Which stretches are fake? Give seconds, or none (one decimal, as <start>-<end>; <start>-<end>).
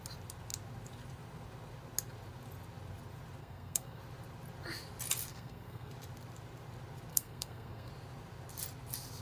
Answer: 3.4-4.0; 5.3-5.9; 7.1-7.9